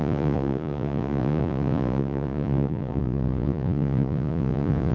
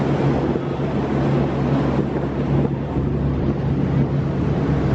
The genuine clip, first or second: second